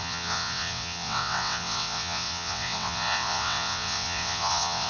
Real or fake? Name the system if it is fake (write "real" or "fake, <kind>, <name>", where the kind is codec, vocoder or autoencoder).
fake, vocoder, WaveNeXt